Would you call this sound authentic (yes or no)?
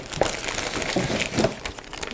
yes